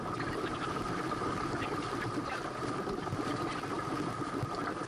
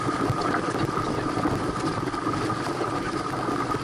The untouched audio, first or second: second